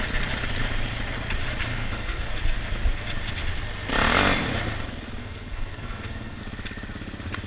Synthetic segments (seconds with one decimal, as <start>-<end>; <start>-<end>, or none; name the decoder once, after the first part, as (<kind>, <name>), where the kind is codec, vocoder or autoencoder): 1.7-2.3 (codec, SNAC); 5.2-6.4